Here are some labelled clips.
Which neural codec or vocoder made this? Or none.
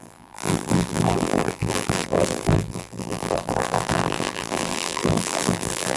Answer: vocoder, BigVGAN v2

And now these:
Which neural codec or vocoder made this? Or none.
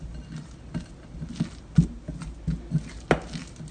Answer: none